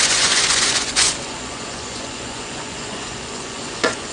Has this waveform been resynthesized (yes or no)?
yes